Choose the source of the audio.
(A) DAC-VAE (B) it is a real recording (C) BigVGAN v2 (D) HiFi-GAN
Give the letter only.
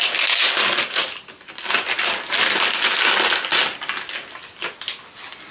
B